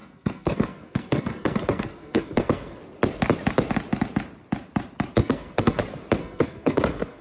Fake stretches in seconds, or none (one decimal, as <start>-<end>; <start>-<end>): 0.0-2.8; 5.2-5.8; 6.2-7.2